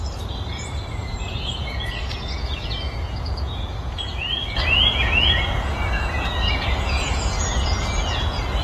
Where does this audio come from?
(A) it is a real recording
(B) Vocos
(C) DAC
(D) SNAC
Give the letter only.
B